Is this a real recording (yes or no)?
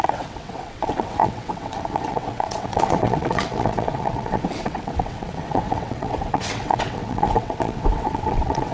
no